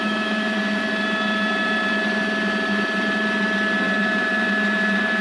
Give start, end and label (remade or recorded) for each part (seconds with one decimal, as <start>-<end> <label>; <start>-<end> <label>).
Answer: 0.0-0.9 remade; 0.9-4.0 recorded; 4.0-5.2 remade

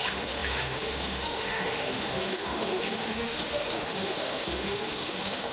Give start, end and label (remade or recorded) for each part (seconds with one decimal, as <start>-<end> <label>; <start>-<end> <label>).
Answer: 0.0-5.5 remade

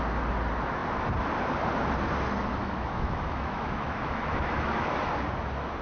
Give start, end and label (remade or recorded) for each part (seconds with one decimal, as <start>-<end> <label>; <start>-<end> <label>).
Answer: 0.0-2.6 recorded; 2.6-4.9 remade; 4.9-5.8 recorded

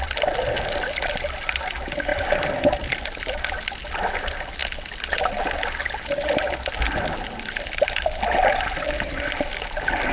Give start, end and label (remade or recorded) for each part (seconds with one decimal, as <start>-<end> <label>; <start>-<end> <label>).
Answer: 0.0-10.1 recorded

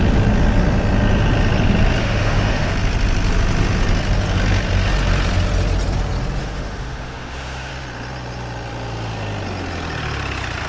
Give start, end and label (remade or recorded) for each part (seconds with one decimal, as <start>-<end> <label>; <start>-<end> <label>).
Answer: 0.0-2.0 recorded; 2.0-2.7 remade; 2.7-6.4 recorded; 6.4-7.7 remade; 7.7-10.7 recorded

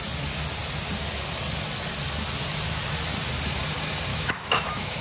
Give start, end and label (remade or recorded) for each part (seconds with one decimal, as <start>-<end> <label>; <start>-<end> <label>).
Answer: 0.0-4.1 recorded; 4.1-5.0 remade

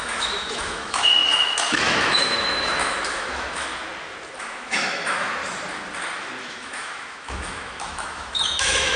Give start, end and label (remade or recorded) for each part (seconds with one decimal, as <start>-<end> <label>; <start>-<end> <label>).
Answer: 0.0-3.7 remade; 3.7-4.4 recorded; 4.4-5.4 remade; 5.4-6.5 recorded; 6.5-9.0 remade

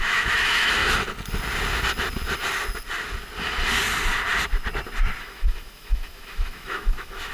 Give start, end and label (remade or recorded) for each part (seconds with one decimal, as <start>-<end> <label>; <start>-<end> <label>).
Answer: 0.0-0.8 remade; 0.8-5.2 recorded; 5.2-7.3 remade